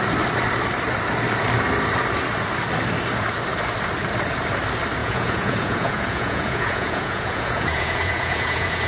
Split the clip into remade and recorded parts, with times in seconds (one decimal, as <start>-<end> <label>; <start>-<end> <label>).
0.0-5.0 recorded; 5.0-8.9 remade